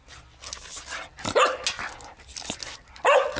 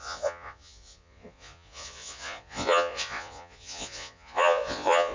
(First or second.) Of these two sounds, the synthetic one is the second